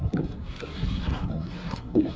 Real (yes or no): no